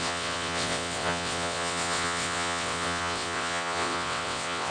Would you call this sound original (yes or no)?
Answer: no